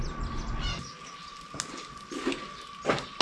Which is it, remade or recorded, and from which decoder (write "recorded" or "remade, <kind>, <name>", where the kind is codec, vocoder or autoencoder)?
recorded